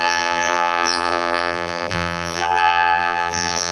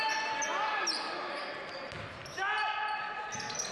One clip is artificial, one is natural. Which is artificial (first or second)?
first